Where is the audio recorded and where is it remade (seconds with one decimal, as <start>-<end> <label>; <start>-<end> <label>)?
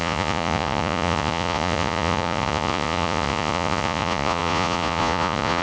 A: 0.0-5.6 remade